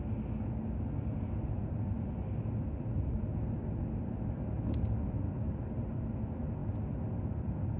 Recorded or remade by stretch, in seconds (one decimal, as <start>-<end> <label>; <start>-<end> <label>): 0.0-7.8 recorded